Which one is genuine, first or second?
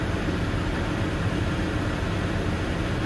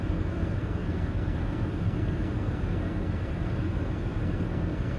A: first